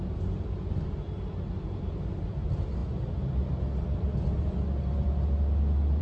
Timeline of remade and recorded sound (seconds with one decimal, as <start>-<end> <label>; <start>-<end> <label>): 0.0-6.0 recorded